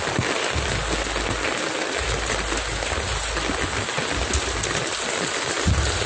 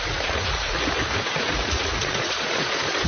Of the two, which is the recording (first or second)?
first